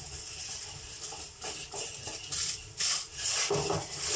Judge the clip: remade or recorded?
recorded